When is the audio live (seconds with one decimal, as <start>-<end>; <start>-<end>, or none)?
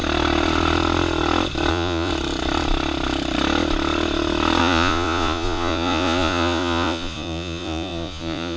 0.0-1.7; 2.1-4.6